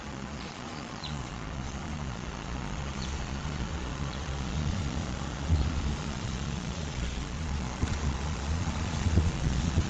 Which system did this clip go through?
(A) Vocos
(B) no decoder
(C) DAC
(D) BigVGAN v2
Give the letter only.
A